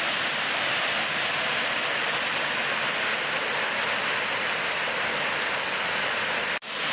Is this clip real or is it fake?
real